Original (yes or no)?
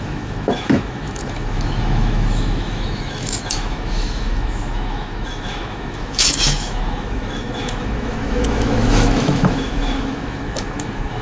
no